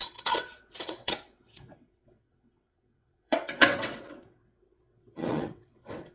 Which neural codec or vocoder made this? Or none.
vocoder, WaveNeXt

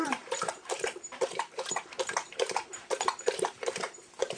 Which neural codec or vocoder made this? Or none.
vocoder, BigVGAN v2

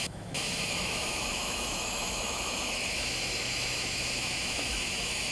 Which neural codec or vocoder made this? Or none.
autoencoder, DAC-VAE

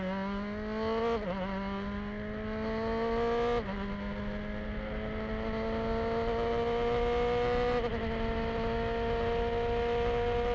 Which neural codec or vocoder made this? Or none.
none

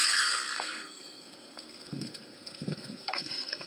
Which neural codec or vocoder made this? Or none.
codec, SNAC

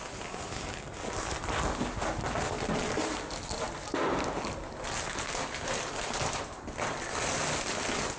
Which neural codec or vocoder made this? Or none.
none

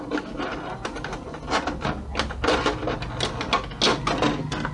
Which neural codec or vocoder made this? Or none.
none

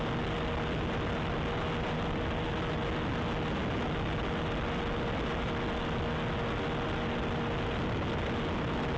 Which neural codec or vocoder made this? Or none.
none